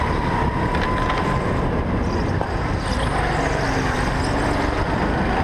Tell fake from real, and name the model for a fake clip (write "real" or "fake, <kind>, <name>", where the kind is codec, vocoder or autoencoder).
real